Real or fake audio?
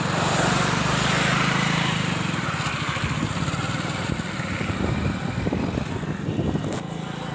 real